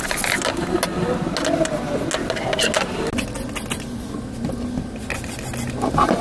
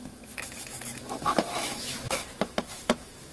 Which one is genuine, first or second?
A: first